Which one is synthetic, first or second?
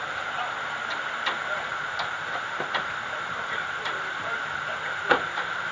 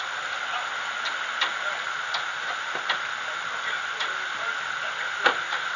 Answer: first